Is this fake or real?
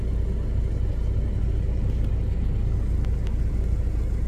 real